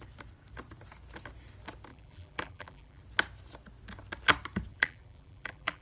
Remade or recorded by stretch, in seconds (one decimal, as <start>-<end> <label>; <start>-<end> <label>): 0.0-1.9 recorded; 1.9-3.0 remade; 3.0-4.7 recorded; 4.7-5.8 remade